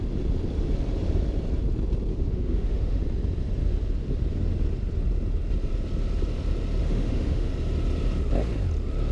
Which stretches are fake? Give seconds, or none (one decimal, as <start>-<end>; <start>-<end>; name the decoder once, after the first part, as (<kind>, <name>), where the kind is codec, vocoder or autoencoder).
2.1-3.0 (autoencoder, DAC-VAE); 6.8-7.5